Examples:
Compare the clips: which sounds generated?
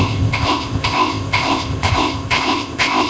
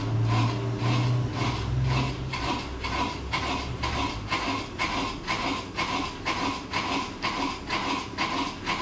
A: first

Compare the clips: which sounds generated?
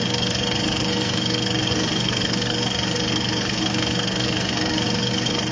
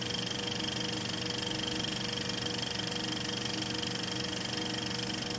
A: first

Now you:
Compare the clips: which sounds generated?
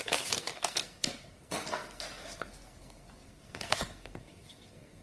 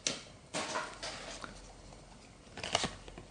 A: first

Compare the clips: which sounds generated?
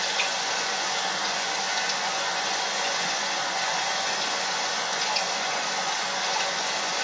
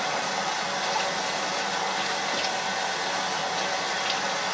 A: first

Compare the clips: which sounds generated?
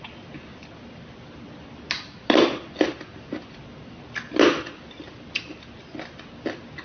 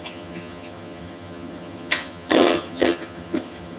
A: second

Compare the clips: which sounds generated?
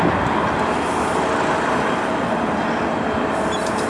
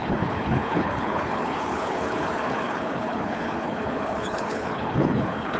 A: second